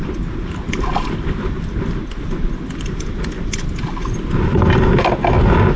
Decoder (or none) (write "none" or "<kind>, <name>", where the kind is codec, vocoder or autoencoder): none